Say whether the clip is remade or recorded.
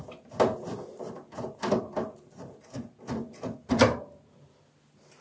recorded